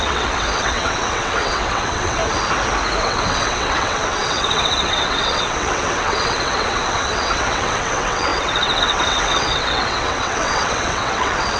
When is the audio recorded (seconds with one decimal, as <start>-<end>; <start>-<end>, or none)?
2.2-3.0